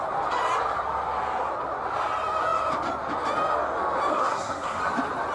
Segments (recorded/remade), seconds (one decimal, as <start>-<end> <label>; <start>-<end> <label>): 0.0-4.1 recorded; 4.1-4.8 remade; 4.8-5.3 recorded